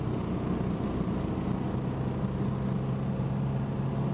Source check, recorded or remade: recorded